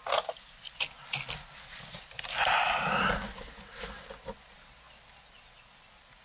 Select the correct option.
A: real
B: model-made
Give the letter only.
A